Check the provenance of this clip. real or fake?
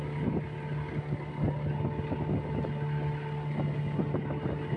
real